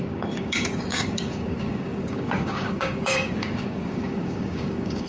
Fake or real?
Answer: fake